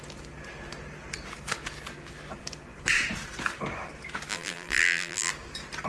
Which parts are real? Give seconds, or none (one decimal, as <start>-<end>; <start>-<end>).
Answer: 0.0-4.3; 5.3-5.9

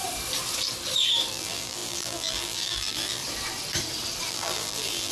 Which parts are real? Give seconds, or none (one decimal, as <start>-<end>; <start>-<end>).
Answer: 0.0-1.3; 3.2-4.3

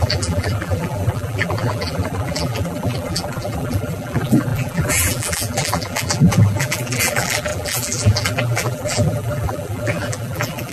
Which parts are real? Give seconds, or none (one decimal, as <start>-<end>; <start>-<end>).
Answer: none

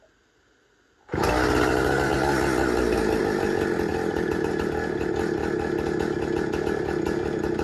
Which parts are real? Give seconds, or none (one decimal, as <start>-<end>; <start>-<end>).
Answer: 0.0-3.9; 5.1-7.6

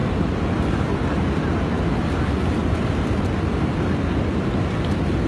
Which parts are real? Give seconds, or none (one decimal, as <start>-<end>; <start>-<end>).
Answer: 1.0-2.6

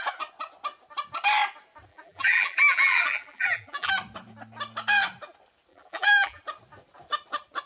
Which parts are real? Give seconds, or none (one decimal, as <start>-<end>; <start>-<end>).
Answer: 0.0-1.9; 3.9-5.7; 6.4-7.7

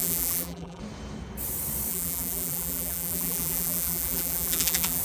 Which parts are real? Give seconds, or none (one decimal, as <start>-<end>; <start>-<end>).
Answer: 0.8-1.9

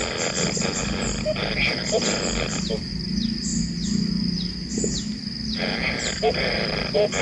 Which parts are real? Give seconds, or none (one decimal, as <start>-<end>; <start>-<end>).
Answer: 0.0-0.8; 3.5-5.9